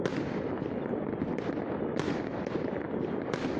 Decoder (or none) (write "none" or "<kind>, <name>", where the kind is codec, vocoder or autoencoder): none